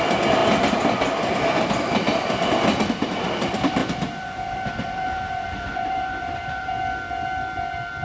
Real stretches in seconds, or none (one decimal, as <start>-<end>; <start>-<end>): 0.0-3.8; 6.7-8.0